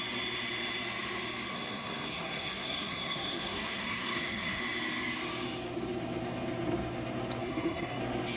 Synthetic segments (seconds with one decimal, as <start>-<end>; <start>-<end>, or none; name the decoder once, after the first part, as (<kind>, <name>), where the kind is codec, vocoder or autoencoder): 1.5-4.6 (codec, SNAC); 7.4-8.0